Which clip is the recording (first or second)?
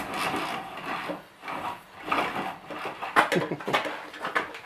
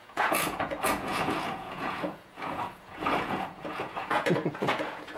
first